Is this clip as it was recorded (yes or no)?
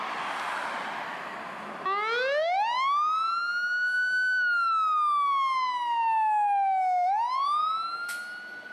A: yes